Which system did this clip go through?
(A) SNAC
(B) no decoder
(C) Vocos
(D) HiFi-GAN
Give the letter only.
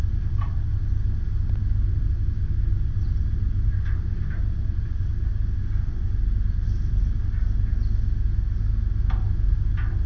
B